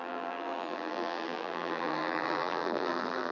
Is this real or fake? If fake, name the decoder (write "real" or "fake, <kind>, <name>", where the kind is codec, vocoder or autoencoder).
fake, vocoder, BigVGAN v2